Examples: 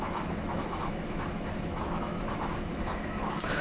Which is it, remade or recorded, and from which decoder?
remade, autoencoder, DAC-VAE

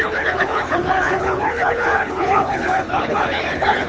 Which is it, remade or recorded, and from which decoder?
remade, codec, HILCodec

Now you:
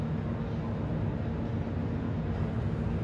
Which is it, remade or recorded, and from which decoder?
recorded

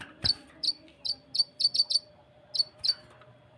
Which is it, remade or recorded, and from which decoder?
recorded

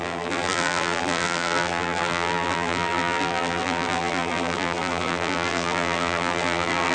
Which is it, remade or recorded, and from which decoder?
remade, vocoder, BigVGAN v2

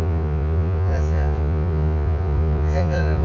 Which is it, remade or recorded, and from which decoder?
remade, vocoder, Vocos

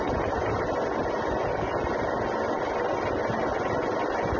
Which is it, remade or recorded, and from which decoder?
recorded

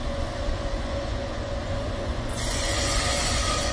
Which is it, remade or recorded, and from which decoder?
remade, vocoder, Vocos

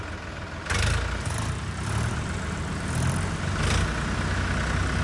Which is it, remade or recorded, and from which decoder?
recorded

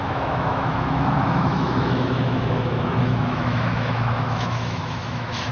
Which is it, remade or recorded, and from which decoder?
remade, autoencoder, DAC-VAE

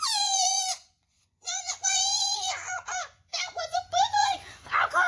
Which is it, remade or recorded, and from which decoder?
remade, vocoder, Vocos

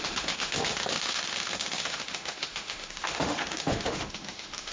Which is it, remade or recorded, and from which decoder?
remade, autoencoder, DAC-VAE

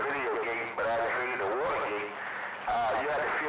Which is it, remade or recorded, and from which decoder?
recorded